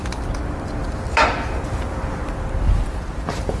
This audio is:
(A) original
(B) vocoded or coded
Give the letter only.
A